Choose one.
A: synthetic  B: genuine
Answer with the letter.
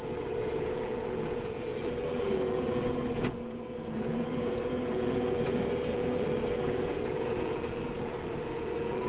A